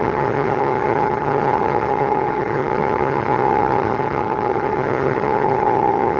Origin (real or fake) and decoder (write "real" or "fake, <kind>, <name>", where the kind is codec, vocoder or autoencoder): fake, vocoder, HiFi-GAN